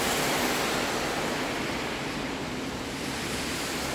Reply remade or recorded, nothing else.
recorded